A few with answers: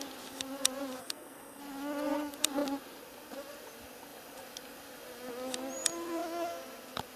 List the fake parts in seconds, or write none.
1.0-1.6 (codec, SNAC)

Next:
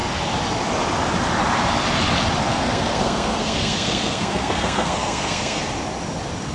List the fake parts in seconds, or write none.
2.5-5.6 (codec, SNAC)